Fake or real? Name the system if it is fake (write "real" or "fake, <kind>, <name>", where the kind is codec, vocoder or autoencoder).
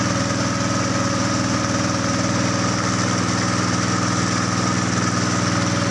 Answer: real